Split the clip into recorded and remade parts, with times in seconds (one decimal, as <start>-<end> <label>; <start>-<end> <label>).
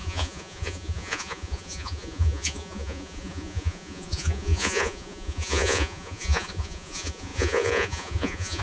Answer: 0.0-8.6 remade